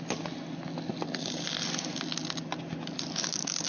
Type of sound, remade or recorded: recorded